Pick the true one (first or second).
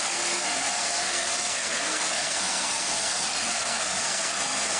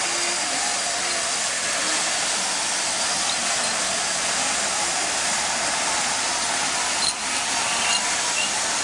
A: second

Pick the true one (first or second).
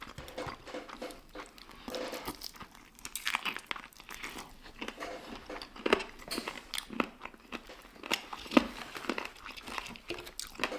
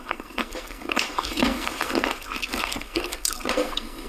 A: first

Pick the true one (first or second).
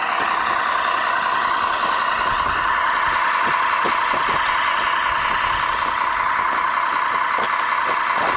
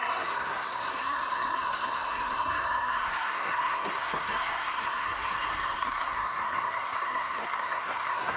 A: first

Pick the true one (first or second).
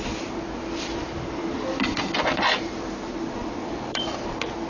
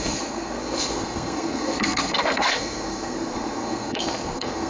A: first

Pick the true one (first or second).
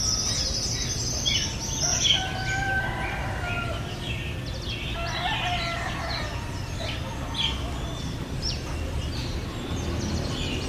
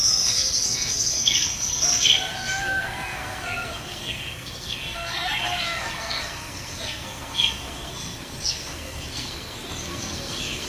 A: first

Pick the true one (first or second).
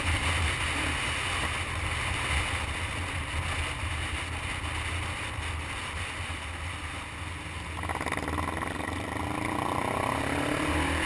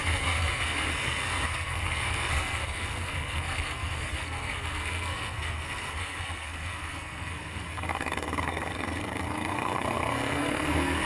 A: first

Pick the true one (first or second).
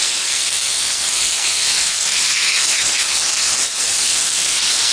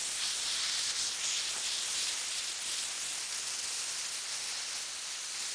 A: second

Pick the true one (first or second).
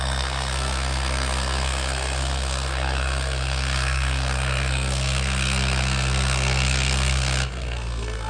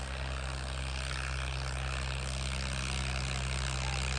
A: second